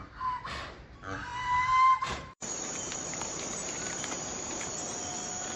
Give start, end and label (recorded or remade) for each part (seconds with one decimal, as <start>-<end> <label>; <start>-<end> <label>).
0.0-1.3 recorded; 1.3-4.7 remade; 4.7-5.6 recorded

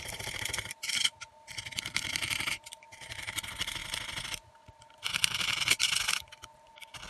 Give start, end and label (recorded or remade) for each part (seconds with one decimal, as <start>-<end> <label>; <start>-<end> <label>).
0.0-1.0 remade; 1.0-2.4 recorded; 2.4-3.8 remade; 3.8-6.6 recorded; 6.6-7.1 remade

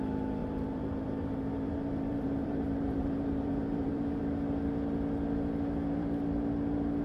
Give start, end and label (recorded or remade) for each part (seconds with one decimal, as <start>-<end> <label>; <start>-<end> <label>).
0.0-0.4 recorded; 0.4-4.2 remade; 4.2-7.0 recorded

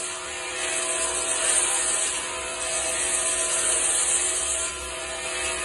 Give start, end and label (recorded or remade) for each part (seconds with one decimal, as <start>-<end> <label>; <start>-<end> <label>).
0.0-5.6 recorded

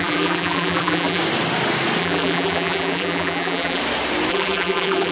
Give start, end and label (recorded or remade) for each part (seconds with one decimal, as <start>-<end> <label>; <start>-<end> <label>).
0.0-1.2 remade; 1.2-2.0 recorded; 2.0-3.8 remade; 3.8-4.3 recorded; 4.3-5.1 remade

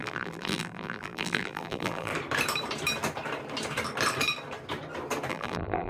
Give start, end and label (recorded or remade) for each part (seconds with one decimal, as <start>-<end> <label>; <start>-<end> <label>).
0.0-2.1 remade; 2.1-5.3 recorded; 5.3-5.9 remade

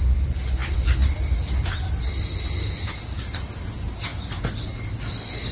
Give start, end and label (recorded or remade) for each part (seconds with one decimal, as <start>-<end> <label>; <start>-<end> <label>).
0.0-5.5 recorded

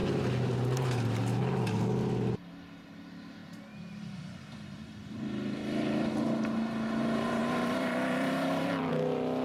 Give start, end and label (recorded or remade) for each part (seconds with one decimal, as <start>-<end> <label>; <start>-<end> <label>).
0.0-3.4 recorded; 3.4-4.2 remade; 4.2-7.4 recorded; 7.4-8.9 remade; 8.9-9.4 recorded